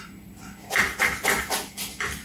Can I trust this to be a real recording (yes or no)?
yes